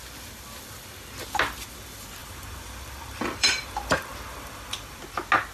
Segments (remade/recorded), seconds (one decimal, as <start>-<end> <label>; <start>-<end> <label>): 0.0-2.2 recorded; 2.2-5.0 remade; 5.0-5.5 recorded